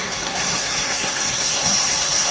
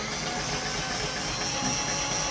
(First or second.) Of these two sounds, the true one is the second